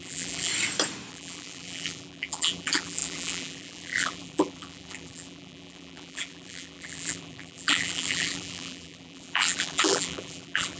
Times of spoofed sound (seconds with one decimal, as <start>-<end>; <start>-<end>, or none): 0.0-0.5; 1.1-10.8